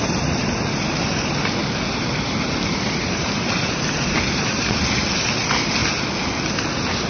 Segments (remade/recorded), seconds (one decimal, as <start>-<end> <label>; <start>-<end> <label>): 0.0-1.6 recorded; 1.6-5.0 remade; 5.0-7.1 recorded